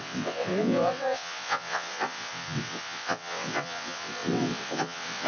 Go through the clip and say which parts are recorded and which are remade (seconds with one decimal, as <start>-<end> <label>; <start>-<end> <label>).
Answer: 0.0-5.3 remade